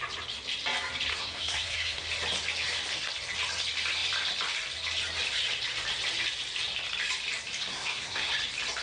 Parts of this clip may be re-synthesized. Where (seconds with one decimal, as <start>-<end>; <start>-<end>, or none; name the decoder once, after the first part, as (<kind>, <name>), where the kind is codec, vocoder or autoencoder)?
1.1-2.0 (codec, SNAC); 7.7-8.3